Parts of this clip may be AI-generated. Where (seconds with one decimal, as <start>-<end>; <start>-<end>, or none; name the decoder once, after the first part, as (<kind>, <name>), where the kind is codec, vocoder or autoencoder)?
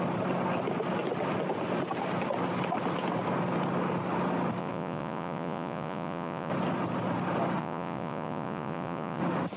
4.6-6.5 (vocoder, Vocos); 7.6-9.2